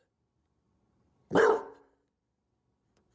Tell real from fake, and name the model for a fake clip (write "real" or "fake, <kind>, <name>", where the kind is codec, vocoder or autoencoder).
fake, vocoder, BigVGAN v2